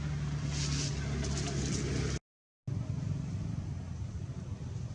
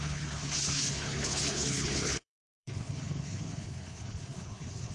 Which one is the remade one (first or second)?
second